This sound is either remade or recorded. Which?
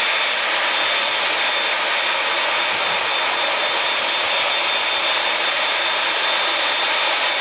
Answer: recorded